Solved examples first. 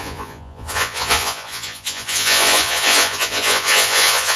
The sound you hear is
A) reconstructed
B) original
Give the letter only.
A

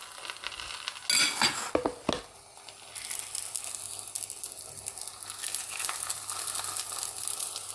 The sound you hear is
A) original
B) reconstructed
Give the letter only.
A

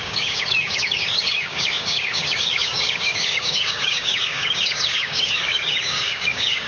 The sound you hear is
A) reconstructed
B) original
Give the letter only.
A